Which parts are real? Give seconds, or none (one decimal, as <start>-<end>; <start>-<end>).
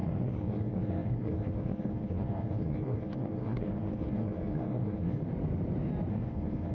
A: 5.2-6.1